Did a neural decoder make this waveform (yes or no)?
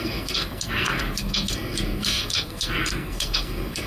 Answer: yes